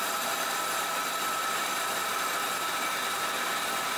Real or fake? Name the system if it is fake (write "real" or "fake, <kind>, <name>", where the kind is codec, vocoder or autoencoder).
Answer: real